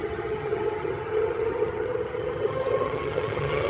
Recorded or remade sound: remade